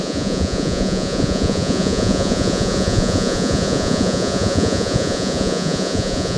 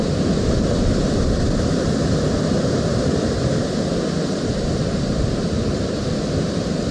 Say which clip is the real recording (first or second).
second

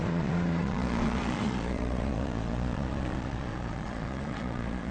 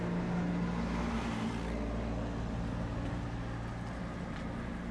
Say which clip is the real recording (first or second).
second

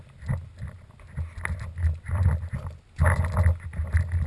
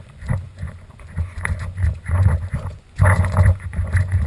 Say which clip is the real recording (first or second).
first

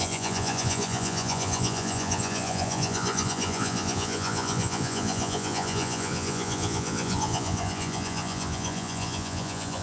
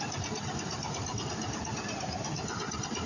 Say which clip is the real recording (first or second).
second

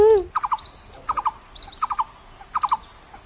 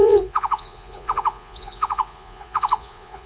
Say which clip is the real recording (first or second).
first